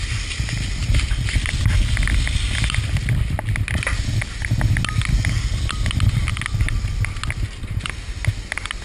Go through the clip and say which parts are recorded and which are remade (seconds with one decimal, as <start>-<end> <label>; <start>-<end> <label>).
0.0-8.8 recorded